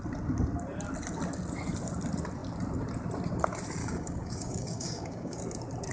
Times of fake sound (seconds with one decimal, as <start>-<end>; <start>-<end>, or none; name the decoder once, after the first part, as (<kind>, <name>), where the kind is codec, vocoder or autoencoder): 3.8-5.4 (codec, DAC)